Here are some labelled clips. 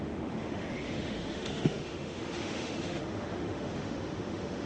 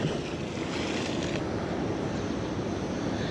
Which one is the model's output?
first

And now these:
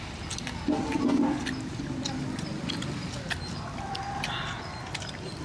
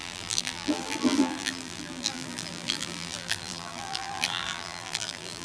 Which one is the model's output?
second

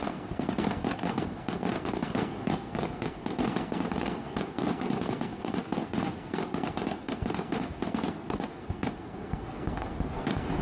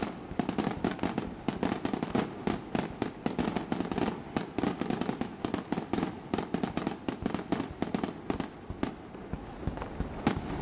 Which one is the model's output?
first